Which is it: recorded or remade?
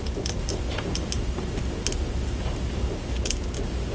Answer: recorded